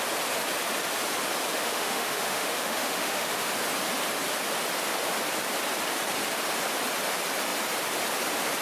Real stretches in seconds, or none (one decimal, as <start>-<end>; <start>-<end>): 0.0-1.5; 3.5-8.6